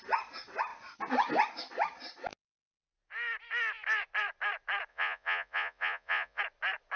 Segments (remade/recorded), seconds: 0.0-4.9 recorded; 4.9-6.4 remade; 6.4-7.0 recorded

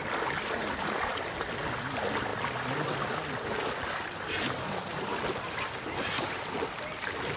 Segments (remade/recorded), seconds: 0.0-7.4 recorded

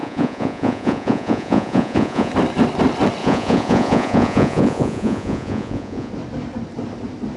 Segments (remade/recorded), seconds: 0.0-2.3 remade; 2.3-3.2 recorded; 3.2-6.1 remade; 6.1-7.4 recorded

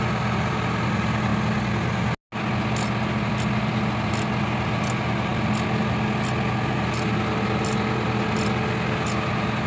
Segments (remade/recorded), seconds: 0.0-9.7 recorded

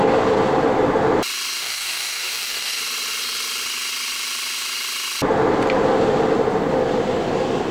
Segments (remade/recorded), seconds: 0.0-1.6 recorded; 1.6-2.8 remade; 2.8-7.7 recorded

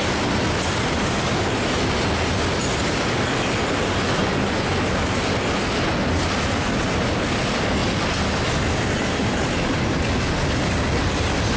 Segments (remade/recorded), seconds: 0.0-4.2 recorded; 4.2-4.8 remade; 4.8-11.6 recorded

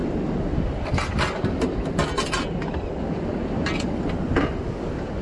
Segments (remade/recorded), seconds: 0.0-5.2 recorded

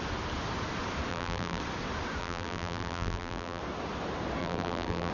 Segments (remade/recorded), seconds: 0.0-1.1 recorded; 1.1-1.6 remade; 1.6-2.2 recorded; 2.2-3.6 remade; 3.6-4.4 recorded; 4.4-5.1 remade